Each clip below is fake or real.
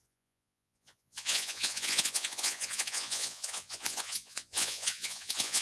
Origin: fake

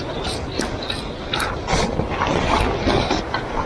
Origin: real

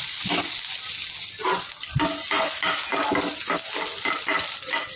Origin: real